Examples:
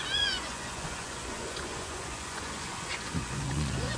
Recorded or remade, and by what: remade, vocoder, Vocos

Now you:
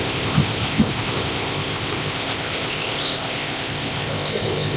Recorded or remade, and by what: remade, codec, ZipCodec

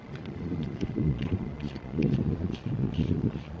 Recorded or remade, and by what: remade, vocoder, Vocos